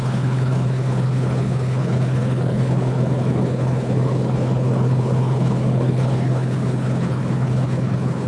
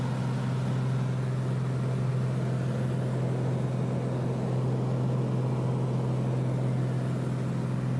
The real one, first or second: second